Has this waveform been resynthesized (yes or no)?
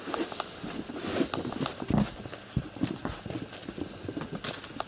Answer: no